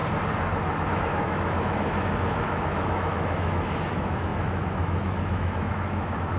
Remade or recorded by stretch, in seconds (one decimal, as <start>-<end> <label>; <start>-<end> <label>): 0.0-0.9 recorded; 0.9-6.4 remade